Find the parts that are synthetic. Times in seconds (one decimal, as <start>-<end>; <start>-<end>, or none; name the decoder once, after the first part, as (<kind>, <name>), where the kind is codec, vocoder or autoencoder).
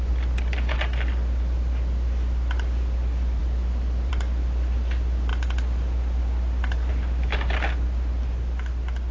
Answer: none